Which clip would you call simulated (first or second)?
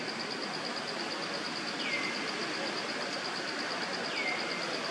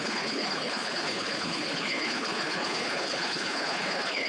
second